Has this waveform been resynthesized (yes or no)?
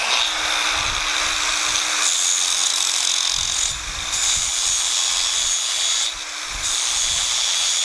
no